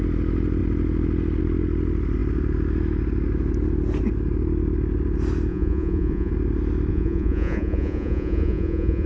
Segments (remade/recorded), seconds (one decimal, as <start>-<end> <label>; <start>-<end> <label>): 0.0-5.5 recorded; 5.5-6.3 remade; 6.3-6.9 recorded; 6.9-9.1 remade